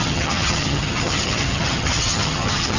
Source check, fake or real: fake